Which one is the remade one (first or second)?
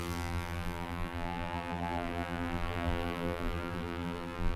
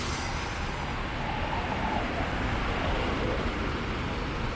first